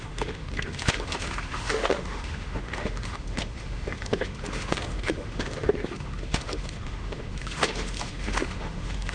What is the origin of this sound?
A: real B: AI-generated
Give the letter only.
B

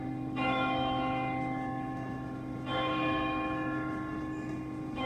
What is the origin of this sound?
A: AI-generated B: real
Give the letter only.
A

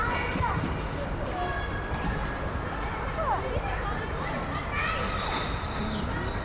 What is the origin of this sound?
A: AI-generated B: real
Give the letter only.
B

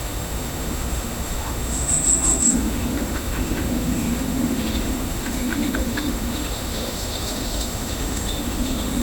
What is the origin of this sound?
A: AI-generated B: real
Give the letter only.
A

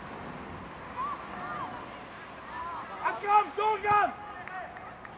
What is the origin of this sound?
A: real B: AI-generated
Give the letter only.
A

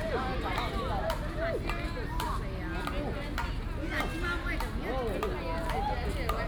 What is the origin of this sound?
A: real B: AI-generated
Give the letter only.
A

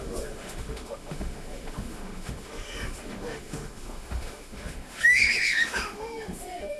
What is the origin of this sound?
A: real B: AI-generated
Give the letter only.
B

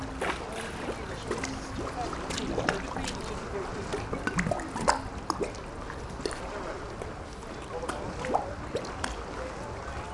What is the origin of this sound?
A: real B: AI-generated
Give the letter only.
A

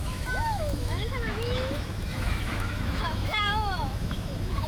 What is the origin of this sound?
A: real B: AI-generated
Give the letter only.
B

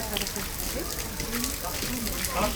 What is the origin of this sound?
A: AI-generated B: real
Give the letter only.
B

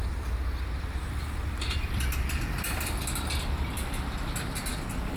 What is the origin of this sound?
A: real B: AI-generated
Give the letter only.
A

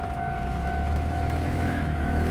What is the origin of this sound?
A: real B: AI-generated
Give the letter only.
B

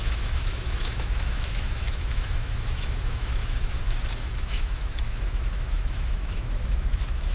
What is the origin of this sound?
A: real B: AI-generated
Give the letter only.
B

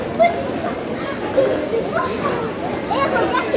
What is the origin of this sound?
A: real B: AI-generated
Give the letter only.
A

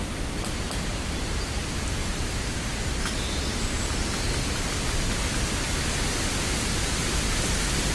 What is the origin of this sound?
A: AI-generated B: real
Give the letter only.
B